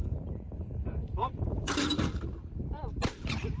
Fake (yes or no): yes